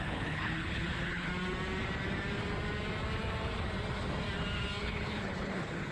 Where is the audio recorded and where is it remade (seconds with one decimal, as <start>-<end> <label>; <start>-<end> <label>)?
0.0-1.3 remade; 1.3-4.8 recorded; 4.8-5.9 remade

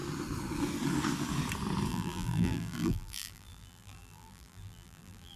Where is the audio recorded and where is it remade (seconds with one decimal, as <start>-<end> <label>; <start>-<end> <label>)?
0.0-1.9 recorded; 1.9-5.4 remade

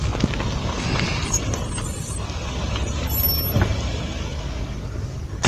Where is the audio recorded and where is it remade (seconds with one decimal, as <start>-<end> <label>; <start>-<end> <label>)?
0.0-5.5 recorded